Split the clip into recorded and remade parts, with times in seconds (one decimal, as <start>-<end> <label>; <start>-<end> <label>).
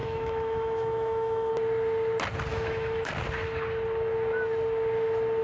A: 0.0-1.5 remade; 1.5-2.5 recorded; 2.5-3.1 remade; 3.1-5.4 recorded